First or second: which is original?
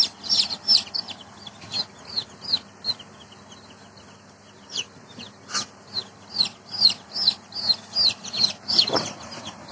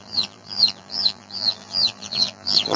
first